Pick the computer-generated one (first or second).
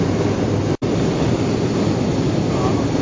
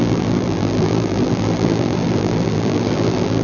second